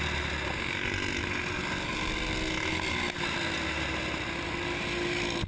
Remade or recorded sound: recorded